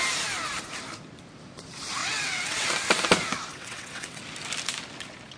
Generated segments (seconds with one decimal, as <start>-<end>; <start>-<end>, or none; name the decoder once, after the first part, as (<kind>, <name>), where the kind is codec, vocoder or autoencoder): 2.0-2.7 (vocoder, WaveNeXt); 3.5-4.2